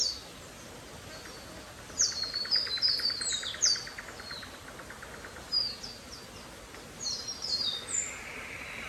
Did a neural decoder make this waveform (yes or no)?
no